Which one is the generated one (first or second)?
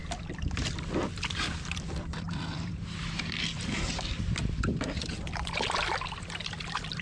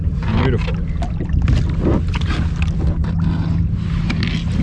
first